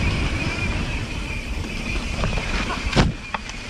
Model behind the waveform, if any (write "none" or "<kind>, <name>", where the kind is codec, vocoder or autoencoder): none